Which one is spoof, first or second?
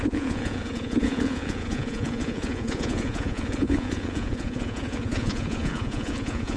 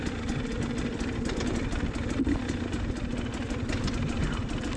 first